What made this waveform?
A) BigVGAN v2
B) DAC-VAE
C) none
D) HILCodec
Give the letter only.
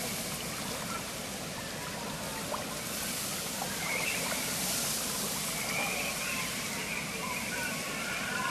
C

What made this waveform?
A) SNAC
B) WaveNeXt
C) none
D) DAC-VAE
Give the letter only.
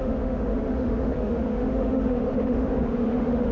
D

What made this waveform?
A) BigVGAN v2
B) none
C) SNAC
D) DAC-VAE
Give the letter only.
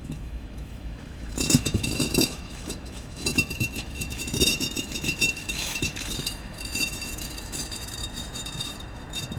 D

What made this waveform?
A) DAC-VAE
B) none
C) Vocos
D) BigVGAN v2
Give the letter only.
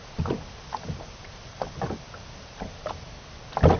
B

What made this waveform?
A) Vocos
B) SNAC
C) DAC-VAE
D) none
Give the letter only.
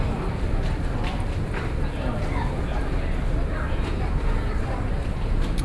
D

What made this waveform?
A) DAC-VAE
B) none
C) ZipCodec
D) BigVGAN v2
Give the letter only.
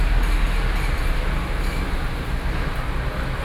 B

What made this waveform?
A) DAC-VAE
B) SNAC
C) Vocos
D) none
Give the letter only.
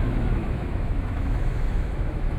A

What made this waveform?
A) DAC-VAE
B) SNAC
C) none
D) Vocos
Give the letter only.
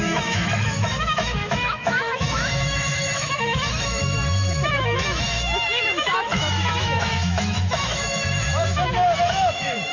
A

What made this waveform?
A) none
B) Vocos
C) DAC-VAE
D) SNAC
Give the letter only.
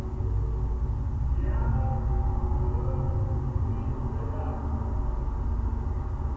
A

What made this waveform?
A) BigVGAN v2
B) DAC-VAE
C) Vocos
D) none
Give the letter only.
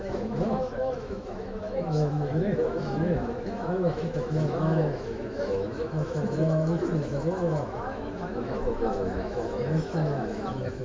B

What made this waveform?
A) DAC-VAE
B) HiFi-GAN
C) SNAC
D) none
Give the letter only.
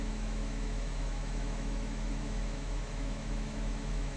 A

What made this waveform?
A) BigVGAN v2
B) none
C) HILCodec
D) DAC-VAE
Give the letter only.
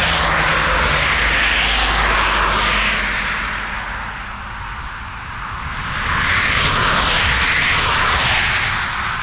B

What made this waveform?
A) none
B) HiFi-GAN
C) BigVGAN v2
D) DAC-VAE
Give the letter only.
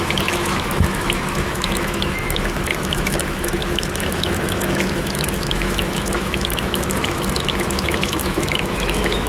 D